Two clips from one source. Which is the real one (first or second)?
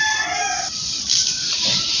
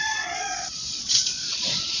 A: first